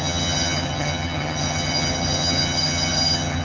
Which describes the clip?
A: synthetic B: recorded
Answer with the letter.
A